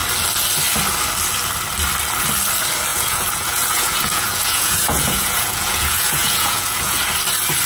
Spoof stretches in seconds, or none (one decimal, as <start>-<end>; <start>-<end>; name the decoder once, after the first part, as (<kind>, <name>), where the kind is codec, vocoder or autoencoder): 2.9-7.0 (vocoder, Vocos)